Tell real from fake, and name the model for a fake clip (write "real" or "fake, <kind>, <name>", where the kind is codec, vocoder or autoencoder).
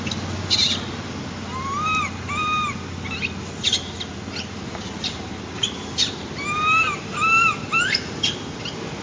real